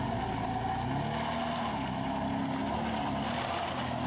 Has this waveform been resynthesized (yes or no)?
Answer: no